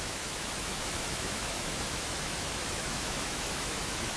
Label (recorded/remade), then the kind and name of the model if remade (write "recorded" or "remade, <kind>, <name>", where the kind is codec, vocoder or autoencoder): remade, autoencoder, DAC-VAE